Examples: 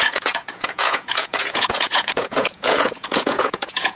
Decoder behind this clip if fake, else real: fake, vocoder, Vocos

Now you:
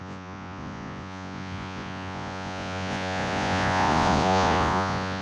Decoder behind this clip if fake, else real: fake, vocoder, Vocos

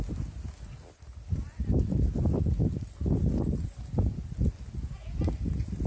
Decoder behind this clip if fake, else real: real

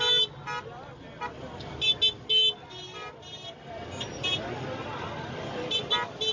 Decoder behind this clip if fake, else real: real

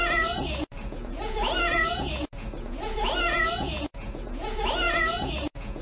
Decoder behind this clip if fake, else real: fake, vocoder, Vocos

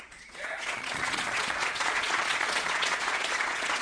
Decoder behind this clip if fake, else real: fake, vocoder, Vocos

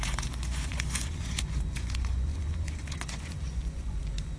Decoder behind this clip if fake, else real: fake, vocoder, Vocos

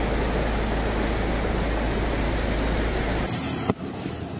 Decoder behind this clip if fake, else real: real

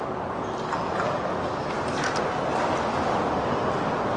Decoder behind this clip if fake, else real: real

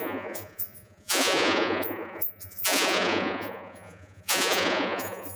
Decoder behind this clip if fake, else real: fake, vocoder, Vocos